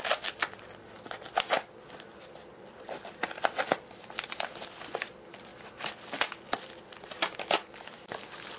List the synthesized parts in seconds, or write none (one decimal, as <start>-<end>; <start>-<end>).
none